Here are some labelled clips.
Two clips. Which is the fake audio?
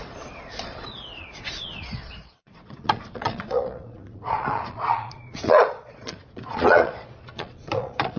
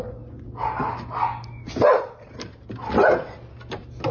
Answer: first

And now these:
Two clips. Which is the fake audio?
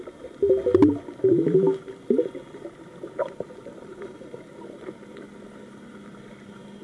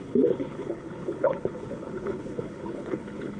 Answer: second